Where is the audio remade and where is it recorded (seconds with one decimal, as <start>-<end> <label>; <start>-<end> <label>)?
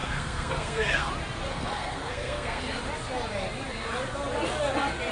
0.0-1.1 remade; 1.1-1.5 recorded; 1.5-2.6 remade; 2.6-5.1 recorded